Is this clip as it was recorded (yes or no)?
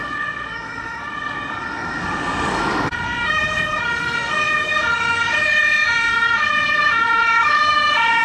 no